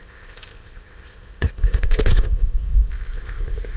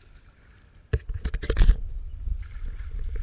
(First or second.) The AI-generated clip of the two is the first